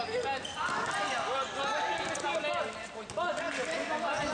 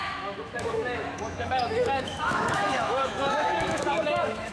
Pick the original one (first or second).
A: first